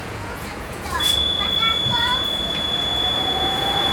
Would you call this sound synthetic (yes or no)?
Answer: yes